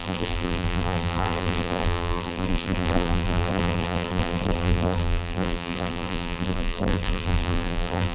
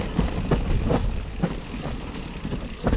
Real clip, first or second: second